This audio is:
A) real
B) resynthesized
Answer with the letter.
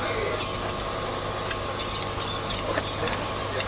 A